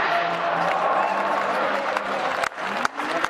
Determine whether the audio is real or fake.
real